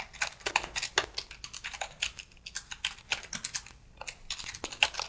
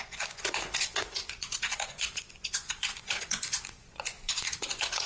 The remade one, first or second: second